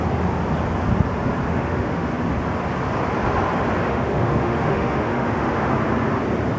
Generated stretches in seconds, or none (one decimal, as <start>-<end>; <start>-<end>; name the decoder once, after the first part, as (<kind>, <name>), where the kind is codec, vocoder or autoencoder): 1.5-2.1 (autoencoder, DAC-VAE); 3.9-5.7